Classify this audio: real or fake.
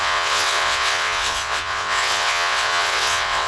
fake